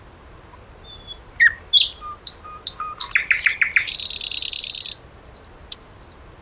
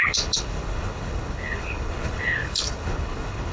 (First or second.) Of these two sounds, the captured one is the first